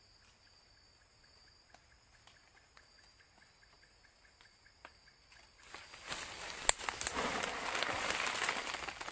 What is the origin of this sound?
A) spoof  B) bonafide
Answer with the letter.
B